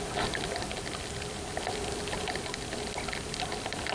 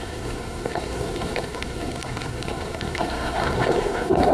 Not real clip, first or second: second